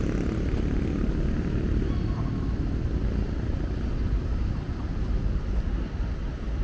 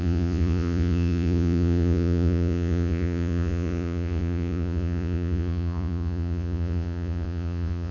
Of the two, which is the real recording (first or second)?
first